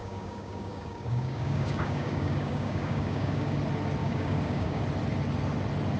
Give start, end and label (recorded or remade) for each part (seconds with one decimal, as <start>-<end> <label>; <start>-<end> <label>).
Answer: 0.0-3.6 remade; 3.6-4.0 recorded; 4.0-4.8 remade; 4.8-6.0 recorded